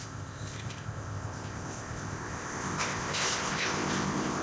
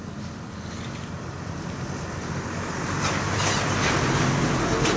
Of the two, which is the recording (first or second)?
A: second